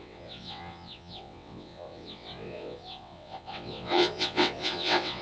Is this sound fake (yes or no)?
yes